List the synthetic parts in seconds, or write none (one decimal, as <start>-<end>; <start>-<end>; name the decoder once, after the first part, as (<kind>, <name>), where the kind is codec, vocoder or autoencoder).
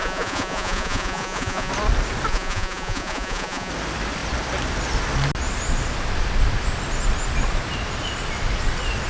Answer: 0.0-1.7 (vocoder, Vocos); 2.3-3.7